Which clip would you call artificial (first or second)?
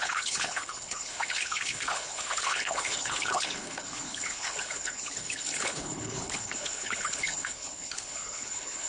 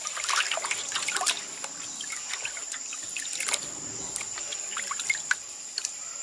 first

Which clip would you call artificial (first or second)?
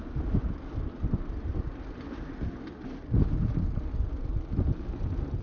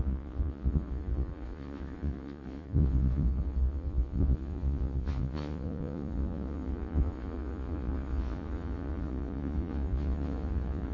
second